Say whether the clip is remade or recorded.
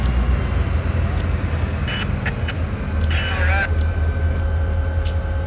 recorded